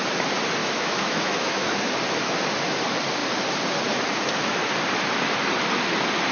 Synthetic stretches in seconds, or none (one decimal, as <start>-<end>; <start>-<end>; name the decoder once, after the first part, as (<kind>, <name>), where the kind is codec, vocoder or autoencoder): 0.6-1.8 (autoencoder, DAC-VAE)